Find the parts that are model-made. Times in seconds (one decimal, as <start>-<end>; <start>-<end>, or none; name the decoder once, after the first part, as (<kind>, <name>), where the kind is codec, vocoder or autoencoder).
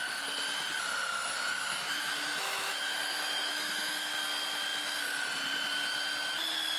1.5-4.1 (autoencoder, DAC-VAE)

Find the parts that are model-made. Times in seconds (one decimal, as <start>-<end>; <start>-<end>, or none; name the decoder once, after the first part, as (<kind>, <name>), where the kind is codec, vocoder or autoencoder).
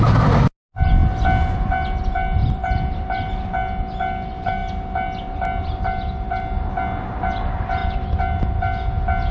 2.4-3.3 (vocoder, BigVGAN v2); 7.8-8.6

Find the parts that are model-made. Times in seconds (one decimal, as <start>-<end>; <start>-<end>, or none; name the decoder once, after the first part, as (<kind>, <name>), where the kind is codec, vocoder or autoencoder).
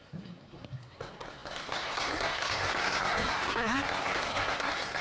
0.0-5.0 (codec, SNAC)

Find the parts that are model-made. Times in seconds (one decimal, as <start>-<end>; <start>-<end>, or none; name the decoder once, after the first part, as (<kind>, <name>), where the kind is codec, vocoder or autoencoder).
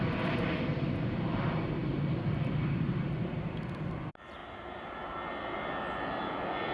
none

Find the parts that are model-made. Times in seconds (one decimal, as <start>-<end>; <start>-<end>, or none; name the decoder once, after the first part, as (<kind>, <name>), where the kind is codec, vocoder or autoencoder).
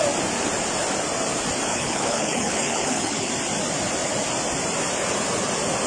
1.7-3.3 (codec, HILCodec)